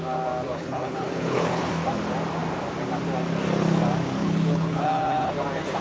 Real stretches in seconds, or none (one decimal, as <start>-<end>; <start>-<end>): 0.0-0.5; 1.7-4.2; 5.3-5.8